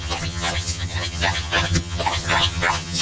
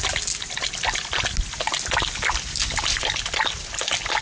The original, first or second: second